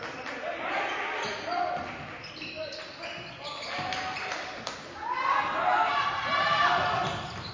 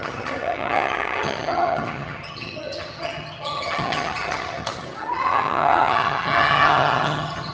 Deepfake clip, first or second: second